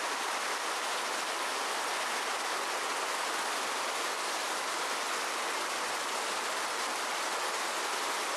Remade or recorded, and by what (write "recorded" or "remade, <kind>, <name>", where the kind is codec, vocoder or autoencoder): recorded